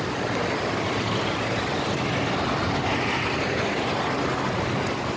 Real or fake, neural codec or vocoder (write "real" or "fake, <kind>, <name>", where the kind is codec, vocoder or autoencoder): real